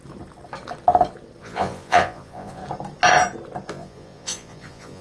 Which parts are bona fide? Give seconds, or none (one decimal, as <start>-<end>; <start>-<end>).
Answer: 0.0-1.4; 2.6-3.7